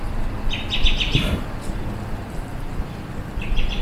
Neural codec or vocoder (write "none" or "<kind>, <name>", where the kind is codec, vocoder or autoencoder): vocoder, BigVGAN v2